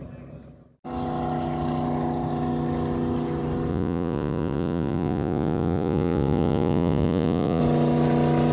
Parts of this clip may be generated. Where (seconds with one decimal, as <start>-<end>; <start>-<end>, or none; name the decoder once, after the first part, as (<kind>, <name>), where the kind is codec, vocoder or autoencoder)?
3.7-7.6 (vocoder, Vocos)